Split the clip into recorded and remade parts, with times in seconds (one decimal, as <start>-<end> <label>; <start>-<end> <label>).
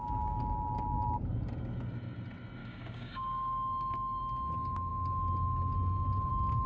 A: 0.0-2.6 recorded; 2.6-4.2 remade; 4.2-6.7 recorded